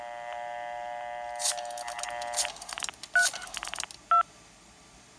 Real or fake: real